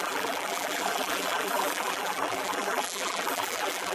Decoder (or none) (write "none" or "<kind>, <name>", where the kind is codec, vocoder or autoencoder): vocoder, BigVGAN v2